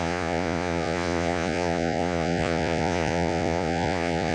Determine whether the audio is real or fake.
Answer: fake